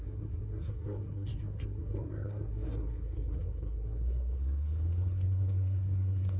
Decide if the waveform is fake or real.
fake